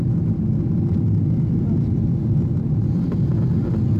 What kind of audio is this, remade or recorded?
recorded